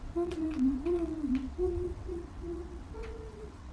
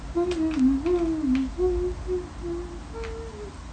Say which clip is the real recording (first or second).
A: second